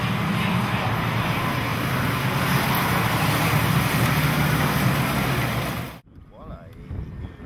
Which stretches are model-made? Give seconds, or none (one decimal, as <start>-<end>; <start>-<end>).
none